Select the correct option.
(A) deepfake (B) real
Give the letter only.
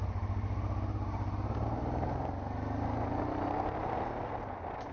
B